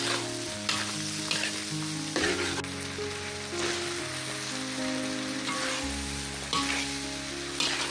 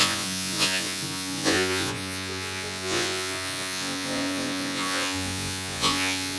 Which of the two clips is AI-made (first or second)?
second